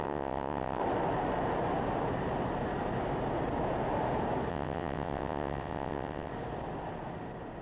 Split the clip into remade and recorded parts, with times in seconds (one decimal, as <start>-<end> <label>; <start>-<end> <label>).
0.0-0.8 remade; 0.8-4.5 recorded; 4.5-6.3 remade; 6.3-7.6 recorded

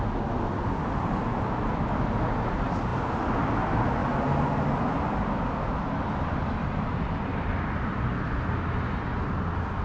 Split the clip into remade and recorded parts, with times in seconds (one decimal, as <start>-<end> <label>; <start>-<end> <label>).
0.0-9.8 recorded

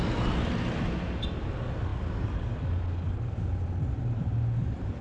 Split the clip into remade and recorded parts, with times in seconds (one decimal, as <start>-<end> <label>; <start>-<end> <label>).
0.0-5.0 recorded

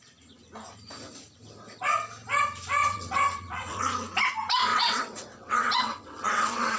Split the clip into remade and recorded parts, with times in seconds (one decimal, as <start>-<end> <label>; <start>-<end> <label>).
0.0-2.8 recorded; 2.8-3.8 remade; 3.8-4.7 recorded; 4.7-6.8 remade

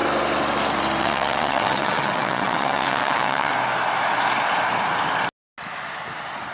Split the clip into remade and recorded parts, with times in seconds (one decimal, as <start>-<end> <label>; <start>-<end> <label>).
0.0-1.0 recorded; 1.0-3.5 remade; 3.5-6.5 recorded

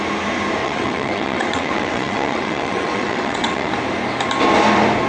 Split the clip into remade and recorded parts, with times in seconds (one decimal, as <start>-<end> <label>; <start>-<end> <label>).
0.0-0.6 recorded; 0.6-3.7 remade; 3.7-5.1 recorded

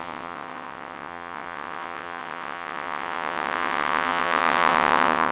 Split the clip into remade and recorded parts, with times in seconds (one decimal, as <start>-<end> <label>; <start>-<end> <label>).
0.0-5.3 remade

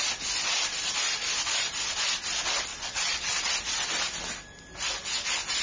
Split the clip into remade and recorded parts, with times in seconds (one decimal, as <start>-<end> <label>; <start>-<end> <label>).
0.0-2.7 recorded; 2.7-3.5 remade; 3.5-5.6 recorded